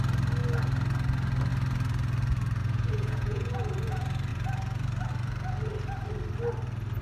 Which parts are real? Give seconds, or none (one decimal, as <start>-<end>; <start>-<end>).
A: 0.0-2.6; 3.6-7.0